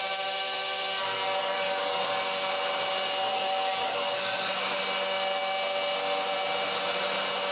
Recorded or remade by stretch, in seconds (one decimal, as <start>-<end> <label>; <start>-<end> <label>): 0.0-1.4 recorded; 1.4-2.2 remade; 2.2-3.3 recorded; 3.3-4.8 remade; 4.8-7.5 recorded